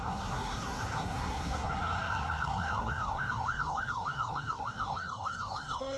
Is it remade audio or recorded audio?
remade